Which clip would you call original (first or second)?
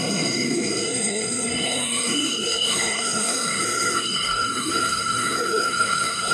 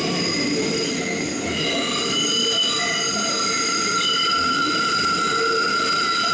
second